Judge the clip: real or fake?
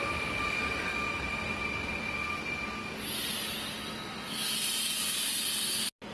real